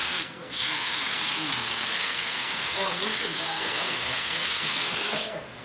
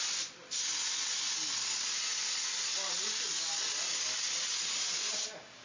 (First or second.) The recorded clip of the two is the second